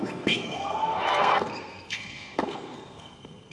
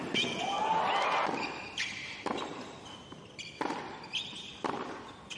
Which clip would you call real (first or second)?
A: second